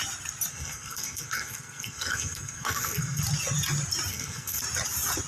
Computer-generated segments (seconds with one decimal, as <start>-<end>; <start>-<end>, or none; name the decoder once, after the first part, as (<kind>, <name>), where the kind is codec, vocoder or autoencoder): 0.5-3.2 (codec, SNAC); 4.1-4.6